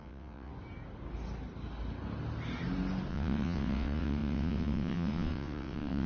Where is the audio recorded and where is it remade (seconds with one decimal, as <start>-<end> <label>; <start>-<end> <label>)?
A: 0.0-0.5 remade; 0.5-3.1 recorded; 3.1-6.1 remade